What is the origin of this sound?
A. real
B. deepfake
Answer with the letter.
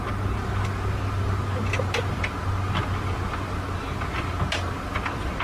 A